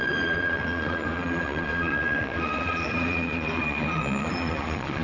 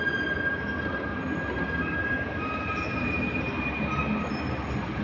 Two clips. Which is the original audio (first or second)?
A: second